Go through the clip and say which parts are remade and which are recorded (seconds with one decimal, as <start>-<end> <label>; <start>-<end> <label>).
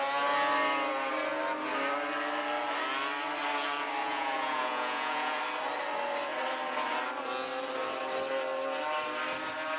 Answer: 0.0-4.0 recorded; 4.0-5.4 remade; 5.4-9.8 recorded